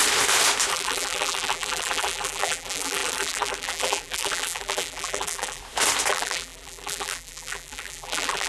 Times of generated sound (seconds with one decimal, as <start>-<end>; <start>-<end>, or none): 0.7-5.6; 6.1-8.5